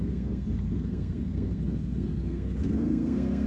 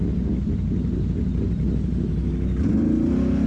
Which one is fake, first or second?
first